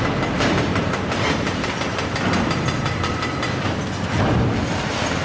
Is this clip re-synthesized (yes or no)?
yes